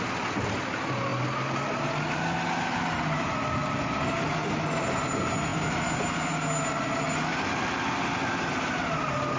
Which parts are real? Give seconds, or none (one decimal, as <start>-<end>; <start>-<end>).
0.0-9.4